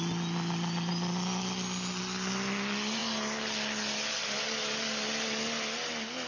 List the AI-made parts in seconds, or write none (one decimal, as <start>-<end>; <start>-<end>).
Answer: none